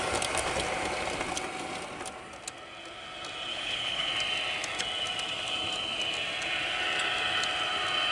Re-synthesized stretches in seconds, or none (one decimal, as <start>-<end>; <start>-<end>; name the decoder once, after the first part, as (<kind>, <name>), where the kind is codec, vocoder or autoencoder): 3.5-4.1 (codec, HILCodec)